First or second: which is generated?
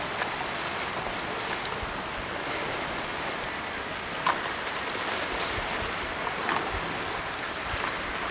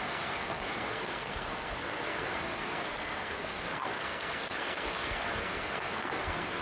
second